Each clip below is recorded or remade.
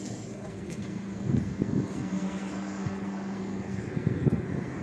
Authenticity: remade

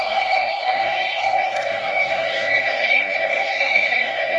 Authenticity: remade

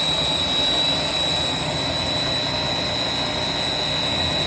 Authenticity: recorded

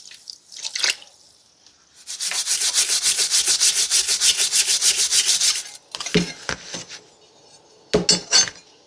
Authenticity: recorded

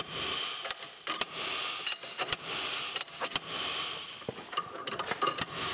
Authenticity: recorded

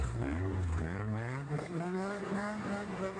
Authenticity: remade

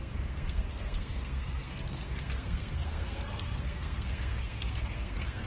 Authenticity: remade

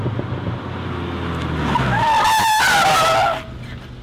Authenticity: recorded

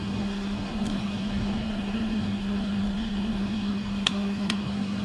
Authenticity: remade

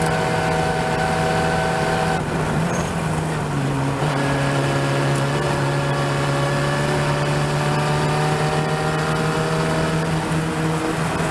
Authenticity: recorded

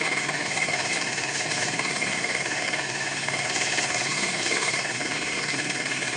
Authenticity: remade